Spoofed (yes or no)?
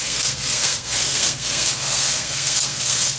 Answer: yes